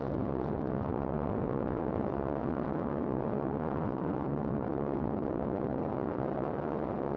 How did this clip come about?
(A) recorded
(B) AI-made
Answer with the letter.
B